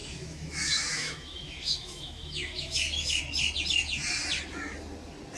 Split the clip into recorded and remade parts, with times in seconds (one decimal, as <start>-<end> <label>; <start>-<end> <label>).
0.0-3.2 remade; 3.2-5.4 recorded